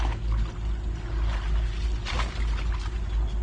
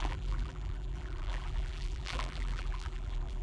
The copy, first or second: second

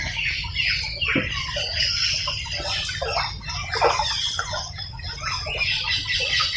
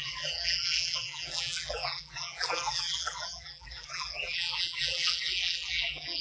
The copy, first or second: second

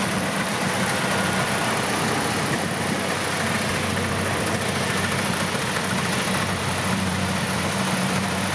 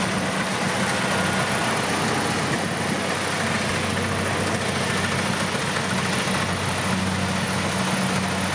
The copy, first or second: first